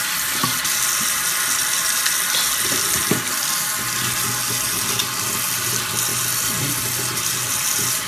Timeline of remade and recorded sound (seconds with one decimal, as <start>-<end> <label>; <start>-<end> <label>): 0.0-8.1 recorded